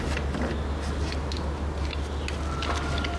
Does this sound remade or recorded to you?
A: recorded